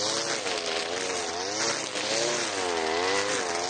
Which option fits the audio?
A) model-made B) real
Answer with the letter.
B